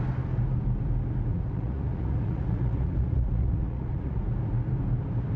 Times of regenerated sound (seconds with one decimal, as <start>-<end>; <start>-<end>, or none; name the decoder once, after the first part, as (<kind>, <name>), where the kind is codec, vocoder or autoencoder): 1.3-4.2 (vocoder, Vocos)